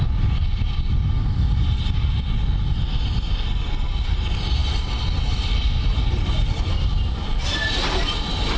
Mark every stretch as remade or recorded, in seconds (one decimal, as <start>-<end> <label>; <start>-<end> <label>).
0.0-8.6 recorded